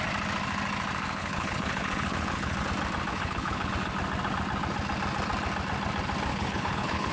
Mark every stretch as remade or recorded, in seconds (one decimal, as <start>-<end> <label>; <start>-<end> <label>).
0.0-1.2 recorded; 1.2-2.7 remade; 2.7-3.1 recorded; 3.1-3.7 remade; 3.7-6.3 recorded; 6.3-7.1 remade